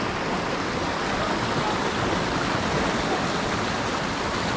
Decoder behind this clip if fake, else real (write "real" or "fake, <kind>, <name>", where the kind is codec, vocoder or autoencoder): real